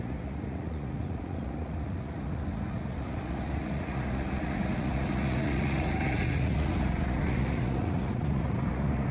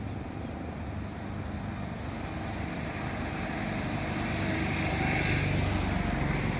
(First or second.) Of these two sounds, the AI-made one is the first